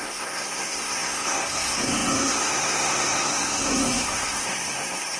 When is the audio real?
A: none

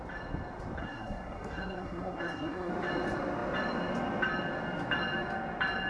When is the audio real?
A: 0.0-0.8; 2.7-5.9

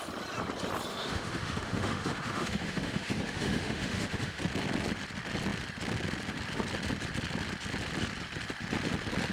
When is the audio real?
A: 0.0-0.9; 4.4-9.3